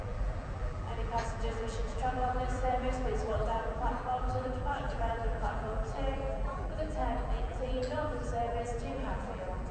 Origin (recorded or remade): remade